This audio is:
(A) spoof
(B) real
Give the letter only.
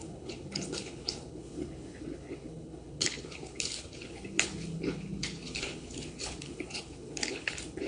A